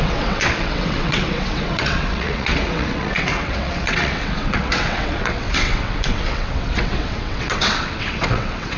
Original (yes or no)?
no